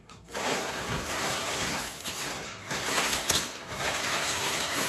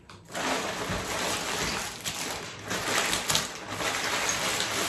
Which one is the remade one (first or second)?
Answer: first